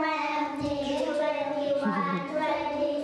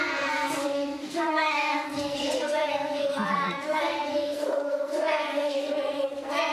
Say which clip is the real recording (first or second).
first